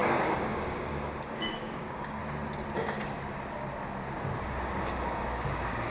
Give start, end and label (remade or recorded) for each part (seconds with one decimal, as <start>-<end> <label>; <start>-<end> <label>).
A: 0.0-2.2 remade; 2.2-4.8 recorded; 4.8-5.9 remade